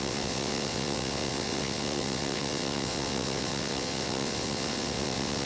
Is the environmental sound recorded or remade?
remade